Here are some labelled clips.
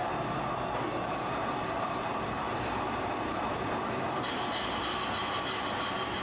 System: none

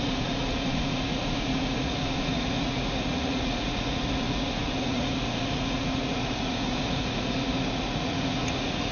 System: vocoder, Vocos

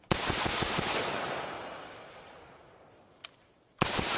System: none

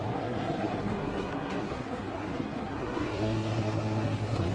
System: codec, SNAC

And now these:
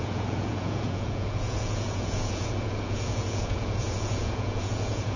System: vocoder, Vocos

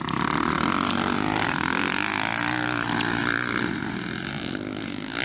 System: none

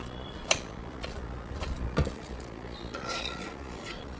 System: vocoder, Vocos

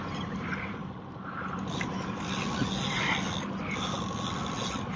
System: vocoder, BigVGAN v2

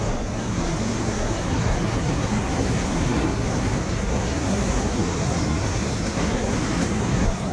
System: codec, SNAC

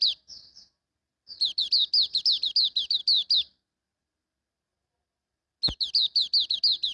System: none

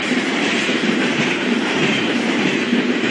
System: vocoder, BigVGAN v2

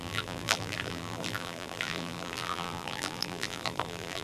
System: vocoder, BigVGAN v2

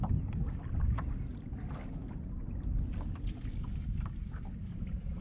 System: none